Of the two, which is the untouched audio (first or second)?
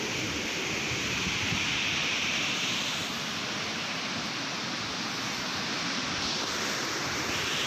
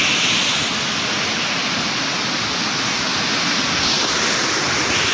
second